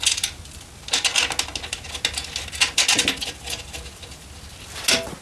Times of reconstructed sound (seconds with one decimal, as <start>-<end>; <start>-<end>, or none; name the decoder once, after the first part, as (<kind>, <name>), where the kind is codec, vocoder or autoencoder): none